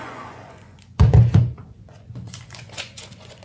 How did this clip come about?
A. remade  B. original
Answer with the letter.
A